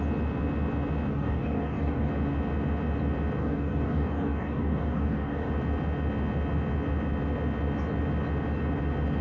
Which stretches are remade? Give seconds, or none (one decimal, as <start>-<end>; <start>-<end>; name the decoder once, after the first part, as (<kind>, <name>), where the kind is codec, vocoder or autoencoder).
1.1-2.1 (codec, DAC); 3.4-5.5